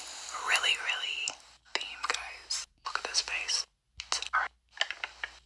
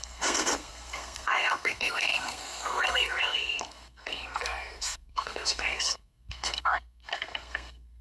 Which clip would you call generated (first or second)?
second